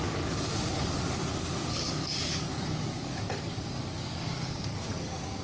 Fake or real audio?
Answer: fake